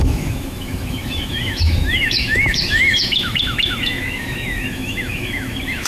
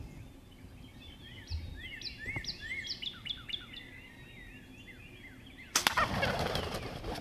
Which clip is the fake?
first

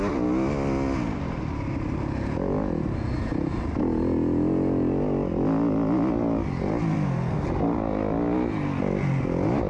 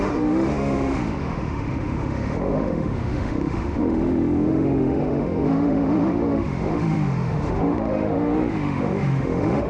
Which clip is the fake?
second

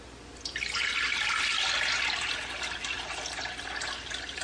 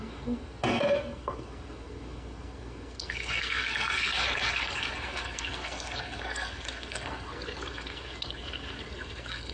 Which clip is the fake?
second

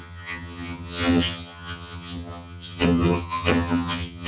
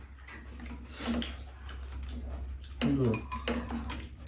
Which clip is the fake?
first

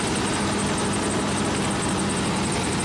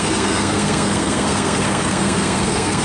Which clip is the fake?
second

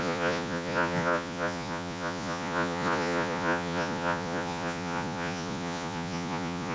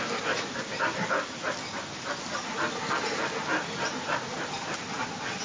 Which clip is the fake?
first